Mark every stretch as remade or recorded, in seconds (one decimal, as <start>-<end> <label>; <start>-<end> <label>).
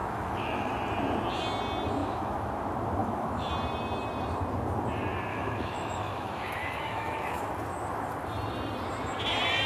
0.0-0.7 remade; 0.7-2.0 recorded; 2.0-2.5 remade; 2.5-3.0 recorded; 3.0-3.5 remade; 3.5-5.3 recorded; 5.3-7.5 remade; 7.5-9.7 recorded